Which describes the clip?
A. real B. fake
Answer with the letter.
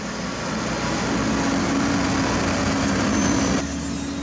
A